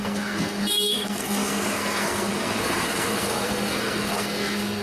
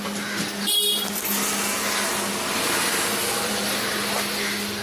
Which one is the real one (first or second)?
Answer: second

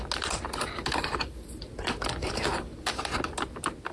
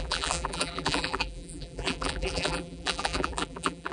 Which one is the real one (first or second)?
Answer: first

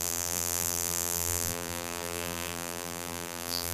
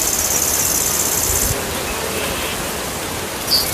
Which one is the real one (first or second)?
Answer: second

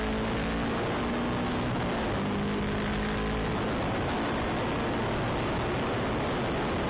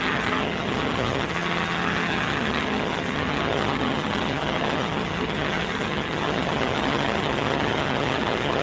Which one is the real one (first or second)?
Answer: first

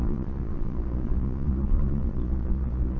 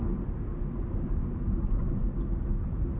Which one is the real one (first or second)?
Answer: second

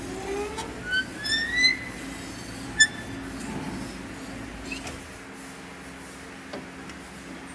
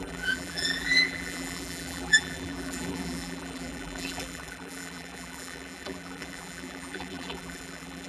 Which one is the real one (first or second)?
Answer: first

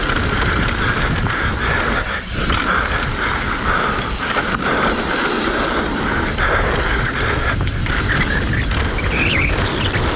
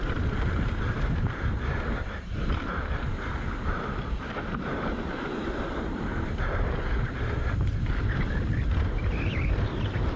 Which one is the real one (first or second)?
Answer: first